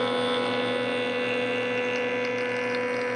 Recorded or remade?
recorded